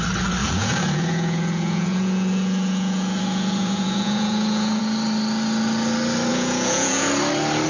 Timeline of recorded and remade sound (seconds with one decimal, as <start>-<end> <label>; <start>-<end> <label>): 0.0-0.4 recorded; 0.4-4.8 remade; 4.8-6.3 recorded; 6.3-7.1 remade; 7.1-7.7 recorded